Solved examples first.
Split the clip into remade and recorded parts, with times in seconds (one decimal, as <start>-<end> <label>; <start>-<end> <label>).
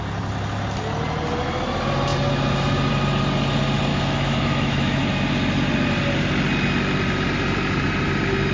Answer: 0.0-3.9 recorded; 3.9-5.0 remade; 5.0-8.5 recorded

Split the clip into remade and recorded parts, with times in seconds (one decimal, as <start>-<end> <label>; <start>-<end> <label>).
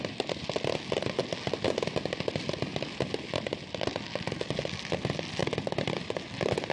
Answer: 0.0-6.7 recorded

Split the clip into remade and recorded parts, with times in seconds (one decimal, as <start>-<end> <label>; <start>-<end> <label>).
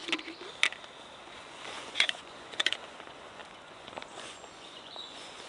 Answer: 0.0-1.2 recorded; 1.2-5.5 remade